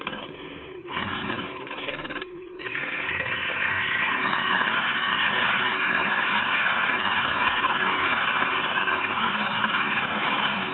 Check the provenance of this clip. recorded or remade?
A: remade